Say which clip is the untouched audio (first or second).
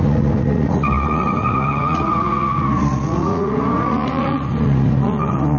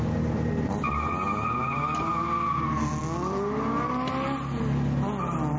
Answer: second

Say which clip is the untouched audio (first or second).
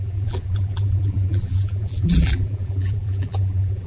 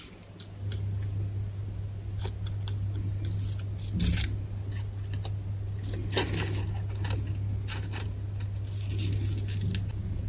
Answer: second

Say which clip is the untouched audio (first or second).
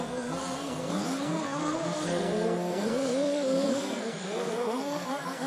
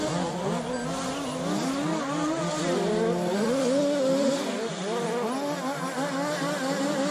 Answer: second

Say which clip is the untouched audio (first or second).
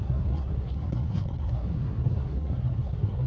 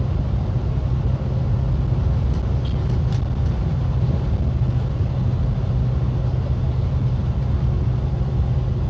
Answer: second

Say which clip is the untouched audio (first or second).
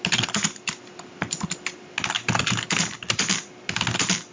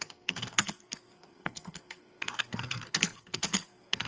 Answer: first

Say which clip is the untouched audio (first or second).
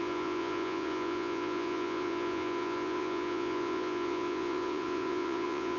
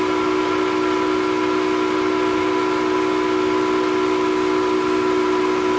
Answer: second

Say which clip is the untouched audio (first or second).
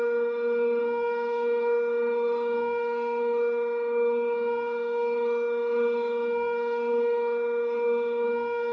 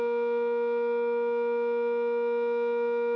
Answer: second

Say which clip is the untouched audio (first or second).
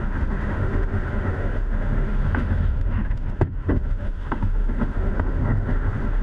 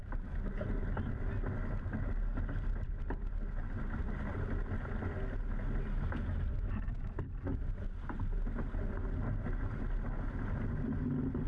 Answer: second